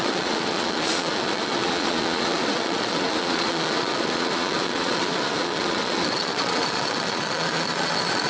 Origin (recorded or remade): remade